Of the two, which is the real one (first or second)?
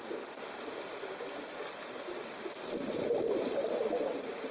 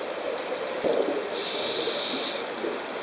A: second